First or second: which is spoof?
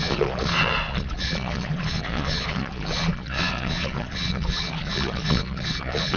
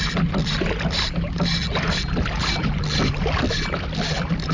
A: first